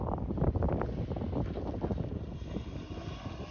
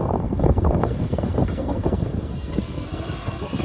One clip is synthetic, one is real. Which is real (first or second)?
first